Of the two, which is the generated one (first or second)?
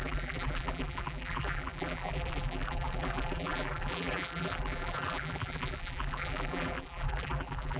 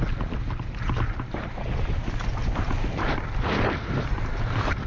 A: first